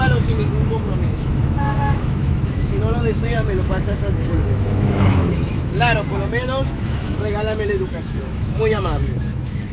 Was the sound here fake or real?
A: fake